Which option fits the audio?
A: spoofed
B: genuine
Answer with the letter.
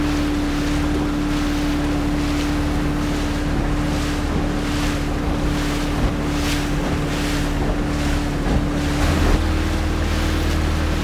B